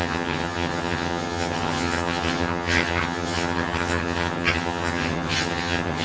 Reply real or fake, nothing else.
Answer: fake